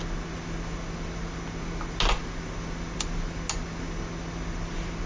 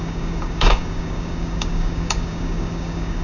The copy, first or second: second